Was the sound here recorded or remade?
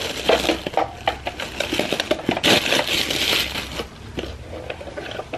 recorded